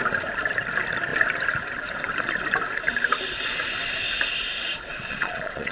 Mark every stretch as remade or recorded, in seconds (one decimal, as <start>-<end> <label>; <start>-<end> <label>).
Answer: 0.0-4.9 recorded; 4.9-5.7 remade